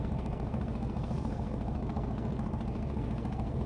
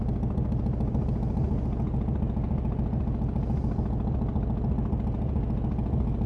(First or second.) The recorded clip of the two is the second